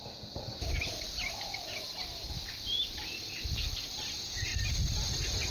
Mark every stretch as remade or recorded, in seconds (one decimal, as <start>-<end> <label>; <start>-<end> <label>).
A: 0.0-5.5 recorded

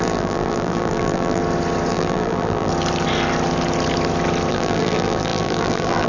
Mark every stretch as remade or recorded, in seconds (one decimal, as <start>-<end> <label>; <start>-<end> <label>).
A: 0.0-1.4 remade; 1.4-1.9 recorded; 1.9-2.7 remade; 2.7-4.5 recorded; 4.5-6.1 remade

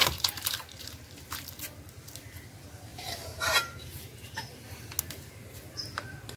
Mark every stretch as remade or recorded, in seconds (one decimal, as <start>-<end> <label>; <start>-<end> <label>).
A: 0.0-1.6 remade; 1.6-2.9 recorded; 2.9-4.9 remade; 4.9-6.4 recorded

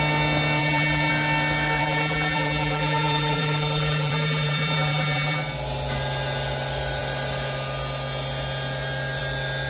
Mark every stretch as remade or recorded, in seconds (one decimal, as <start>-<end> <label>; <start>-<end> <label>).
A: 0.0-0.6 recorded; 0.6-1.1 remade; 1.1-1.8 recorded; 1.8-5.4 remade; 5.4-9.7 recorded

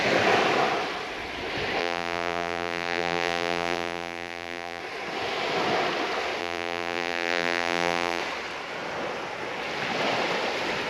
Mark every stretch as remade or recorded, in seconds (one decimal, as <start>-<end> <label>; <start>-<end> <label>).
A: 0.0-1.8 recorded; 1.8-4.8 remade; 4.8-6.4 recorded; 6.4-8.2 remade; 8.2-10.9 recorded

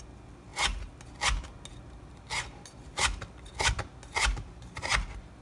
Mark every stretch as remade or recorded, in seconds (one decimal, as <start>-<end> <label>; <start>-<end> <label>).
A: 0.0-5.4 recorded

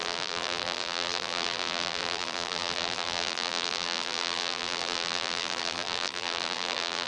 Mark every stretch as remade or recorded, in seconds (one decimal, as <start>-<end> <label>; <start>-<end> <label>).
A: 0.0-7.1 remade